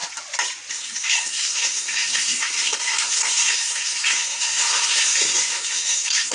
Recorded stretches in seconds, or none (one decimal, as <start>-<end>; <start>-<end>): 0.0-0.7